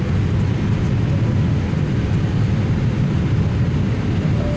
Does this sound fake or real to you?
real